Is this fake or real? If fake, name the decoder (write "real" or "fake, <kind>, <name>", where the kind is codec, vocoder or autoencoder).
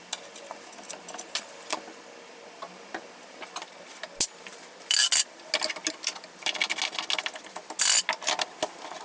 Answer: real